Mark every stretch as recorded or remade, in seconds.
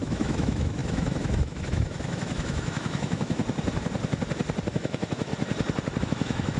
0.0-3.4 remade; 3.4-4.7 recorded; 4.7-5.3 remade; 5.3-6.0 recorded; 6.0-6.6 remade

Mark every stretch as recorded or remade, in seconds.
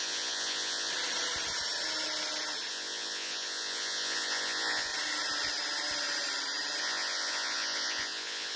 0.0-0.9 remade; 0.9-2.7 recorded; 2.7-4.9 remade; 4.9-6.8 recorded; 6.8-8.6 remade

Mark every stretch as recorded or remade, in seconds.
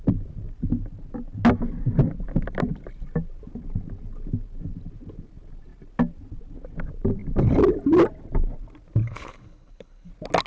0.0-9.0 recorded; 9.0-10.1 remade; 10.1-10.5 recorded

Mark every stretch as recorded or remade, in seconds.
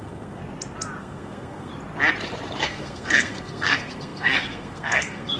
0.0-0.4 remade; 0.4-1.0 recorded; 1.0-1.7 remade; 1.7-2.6 recorded; 2.6-5.4 remade